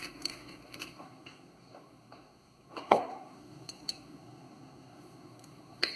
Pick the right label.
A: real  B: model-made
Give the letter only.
B